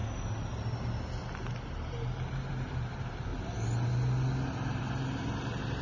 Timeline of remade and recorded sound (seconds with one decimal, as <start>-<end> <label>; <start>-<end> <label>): 0.0-1.7 recorded; 1.7-3.3 remade; 3.3-4.8 recorded; 4.8-5.8 remade